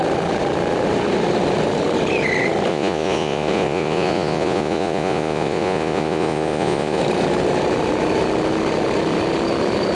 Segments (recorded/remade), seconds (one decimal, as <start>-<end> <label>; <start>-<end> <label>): 0.0-2.7 recorded; 2.7-7.0 remade; 7.0-9.9 recorded